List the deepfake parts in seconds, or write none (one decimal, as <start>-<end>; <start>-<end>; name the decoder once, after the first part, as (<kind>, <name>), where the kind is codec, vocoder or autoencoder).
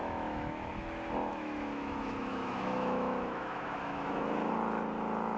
0.0-0.7 (autoencoder, DAC-VAE); 1.3-4.5